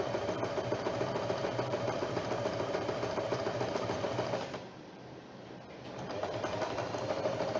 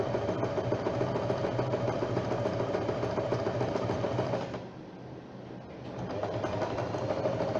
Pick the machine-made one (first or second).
first